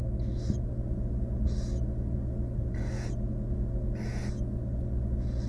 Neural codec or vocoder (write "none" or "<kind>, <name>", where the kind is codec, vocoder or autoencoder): none